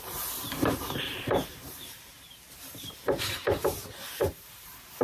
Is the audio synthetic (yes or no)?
yes